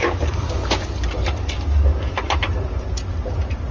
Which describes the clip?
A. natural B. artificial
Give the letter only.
A